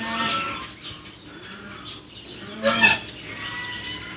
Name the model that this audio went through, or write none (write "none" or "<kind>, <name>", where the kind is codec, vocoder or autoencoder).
none